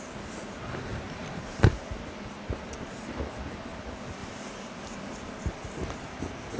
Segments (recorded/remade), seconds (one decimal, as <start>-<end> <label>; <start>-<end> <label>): 0.0-4.2 recorded; 4.2-5.5 remade; 5.5-6.6 recorded